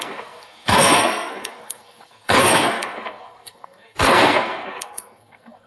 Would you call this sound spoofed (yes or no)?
yes